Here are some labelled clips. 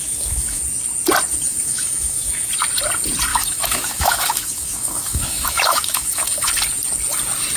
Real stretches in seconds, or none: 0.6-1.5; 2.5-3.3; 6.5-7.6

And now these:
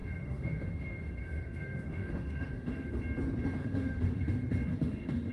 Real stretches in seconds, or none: 3.0-3.6; 4.3-4.7

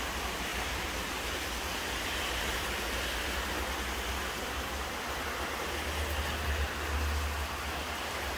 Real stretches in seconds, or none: 0.0-8.4

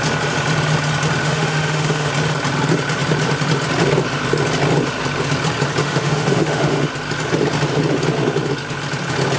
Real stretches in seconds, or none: 0.0-1.2; 2.1-5.8; 6.9-9.4

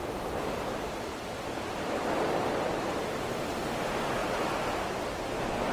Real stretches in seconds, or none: 0.0-5.7